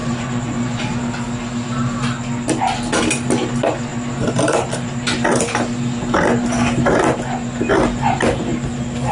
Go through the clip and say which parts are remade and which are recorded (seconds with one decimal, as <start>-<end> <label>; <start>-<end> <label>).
0.0-0.8 remade; 0.8-9.1 recorded